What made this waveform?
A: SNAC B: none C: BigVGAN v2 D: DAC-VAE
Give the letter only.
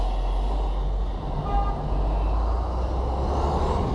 B